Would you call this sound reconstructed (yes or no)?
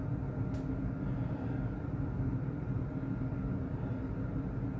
no